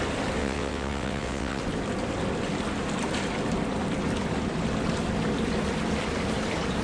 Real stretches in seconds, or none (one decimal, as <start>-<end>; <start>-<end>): 0.0-0.4; 1.6-6.8